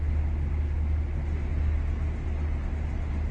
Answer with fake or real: real